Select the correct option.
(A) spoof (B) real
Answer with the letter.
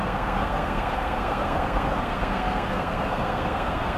A